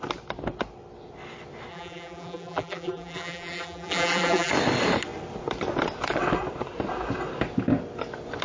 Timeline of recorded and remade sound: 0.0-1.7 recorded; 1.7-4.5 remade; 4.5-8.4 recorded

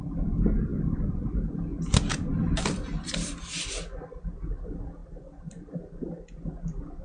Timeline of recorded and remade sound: 0.0-0.7 recorded; 0.7-1.5 remade; 1.5-2.1 recorded; 2.1-3.0 remade; 3.0-5.0 recorded; 5.0-5.7 remade; 5.7-7.0 recorded

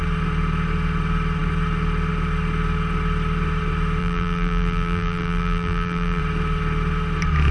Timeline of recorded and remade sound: 0.0-4.0 recorded; 4.0-6.2 remade; 6.2-7.5 recorded

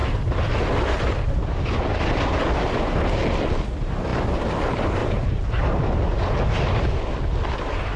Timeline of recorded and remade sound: 0.0-0.7 remade; 0.7-5.0 recorded; 5.0-6.3 remade; 6.3-8.0 recorded

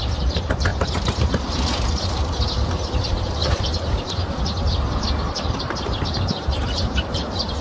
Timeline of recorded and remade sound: 0.0-3.4 remade; 3.4-5.6 recorded; 5.6-7.6 remade

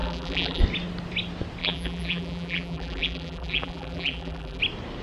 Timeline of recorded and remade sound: 0.0-0.6 remade; 0.6-1.6 recorded; 1.6-4.6 remade; 4.6-5.0 recorded

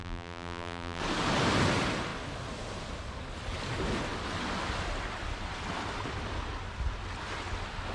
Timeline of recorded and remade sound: 0.0-1.0 remade; 1.0-7.9 recorded

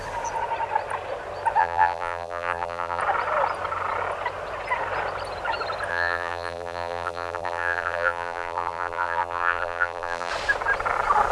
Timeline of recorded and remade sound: 0.0-1.6 recorded; 1.6-3.0 remade; 3.0-5.9 recorded; 5.9-10.3 remade; 10.3-11.3 recorded